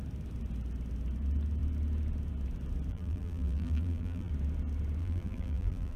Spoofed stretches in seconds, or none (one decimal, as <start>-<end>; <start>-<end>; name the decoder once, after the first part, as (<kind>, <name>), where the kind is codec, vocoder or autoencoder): 2.9-4.3 (vocoder, BigVGAN v2); 5.0-6.0